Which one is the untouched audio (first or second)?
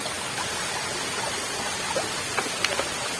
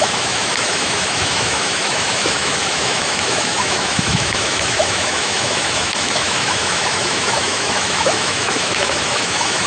first